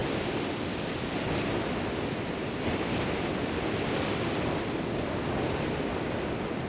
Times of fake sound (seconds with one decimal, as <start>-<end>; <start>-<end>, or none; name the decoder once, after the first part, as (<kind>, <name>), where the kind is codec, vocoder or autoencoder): 0.0-6.7 (vocoder, BigVGAN v2)